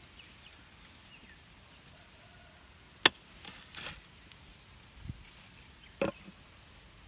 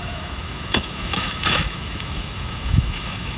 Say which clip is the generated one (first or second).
second